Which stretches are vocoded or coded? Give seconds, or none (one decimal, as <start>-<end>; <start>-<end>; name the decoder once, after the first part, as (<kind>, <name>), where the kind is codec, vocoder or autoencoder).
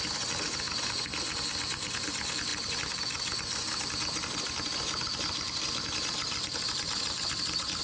none